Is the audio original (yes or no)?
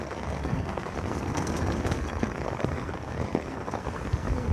no